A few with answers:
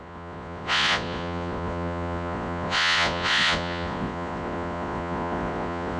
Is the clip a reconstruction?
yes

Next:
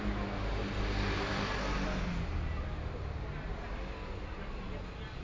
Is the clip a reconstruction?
no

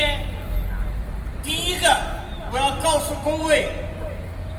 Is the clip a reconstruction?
no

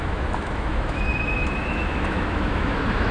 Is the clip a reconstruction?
yes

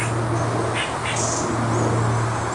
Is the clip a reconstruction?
no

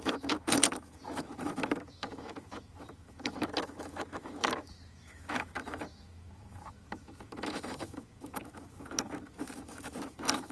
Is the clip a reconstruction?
yes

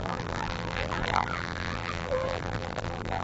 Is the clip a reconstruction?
yes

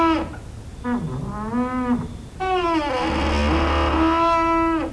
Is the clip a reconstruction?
no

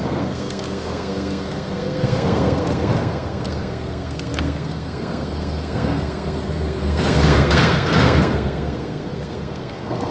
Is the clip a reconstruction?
yes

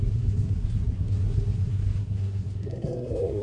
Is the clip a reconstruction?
yes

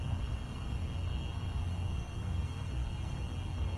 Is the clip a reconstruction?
yes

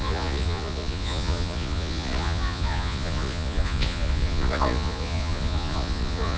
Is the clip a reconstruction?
yes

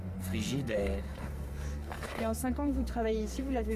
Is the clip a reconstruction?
yes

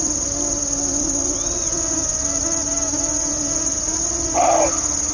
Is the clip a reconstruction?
no